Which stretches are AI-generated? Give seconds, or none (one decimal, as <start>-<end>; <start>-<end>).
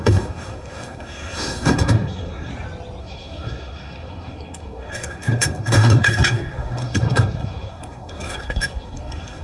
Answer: 0.0-2.5; 3.0-9.4